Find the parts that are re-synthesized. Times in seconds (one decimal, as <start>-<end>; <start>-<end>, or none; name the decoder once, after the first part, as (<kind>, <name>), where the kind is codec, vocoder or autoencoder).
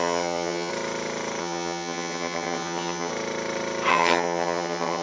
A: 0.0-0.7 (vocoder, HiFi-GAN); 1.4-3.1; 3.9-5.0